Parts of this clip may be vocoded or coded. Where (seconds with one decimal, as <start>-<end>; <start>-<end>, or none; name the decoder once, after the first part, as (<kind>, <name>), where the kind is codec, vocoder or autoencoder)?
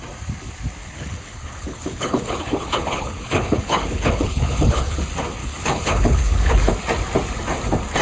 0.8-5.0 (codec, HILCodec); 5.4-6.7